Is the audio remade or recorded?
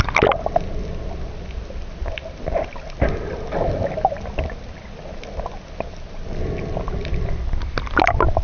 recorded